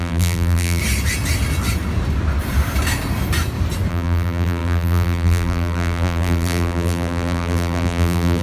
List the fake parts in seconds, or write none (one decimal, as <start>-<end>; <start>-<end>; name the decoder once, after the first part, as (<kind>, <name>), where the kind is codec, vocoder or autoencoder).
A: 0.0-0.8 (vocoder, BigVGAN v2); 3.9-8.4

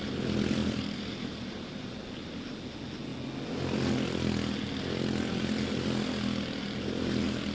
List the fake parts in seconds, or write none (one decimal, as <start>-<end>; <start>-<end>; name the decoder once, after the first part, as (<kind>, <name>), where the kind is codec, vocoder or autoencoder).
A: 0.6-1.9 (vocoder, BigVGAN v2)

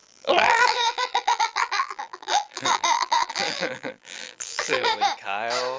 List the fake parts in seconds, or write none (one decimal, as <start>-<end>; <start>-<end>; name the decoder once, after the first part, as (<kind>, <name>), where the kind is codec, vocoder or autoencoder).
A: 0.0-4.9 (vocoder, BigVGAN v2)

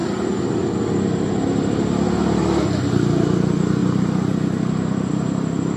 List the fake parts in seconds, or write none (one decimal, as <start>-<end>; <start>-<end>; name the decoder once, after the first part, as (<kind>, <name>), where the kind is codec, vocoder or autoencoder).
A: 3.8-5.1 (vocoder, BigVGAN v2)

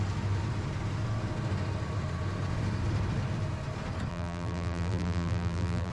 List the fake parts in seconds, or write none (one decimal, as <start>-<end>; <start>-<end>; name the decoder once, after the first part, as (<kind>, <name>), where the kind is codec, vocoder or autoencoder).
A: 4.1-5.9 (vocoder, BigVGAN v2)

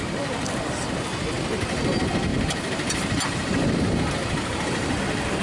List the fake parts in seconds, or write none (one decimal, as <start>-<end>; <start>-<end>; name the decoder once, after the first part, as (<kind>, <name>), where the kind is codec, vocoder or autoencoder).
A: 2.3-5.0 (vocoder, BigVGAN v2)